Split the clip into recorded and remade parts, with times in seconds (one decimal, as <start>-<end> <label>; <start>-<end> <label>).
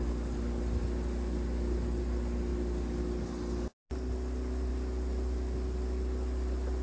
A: 0.0-6.8 recorded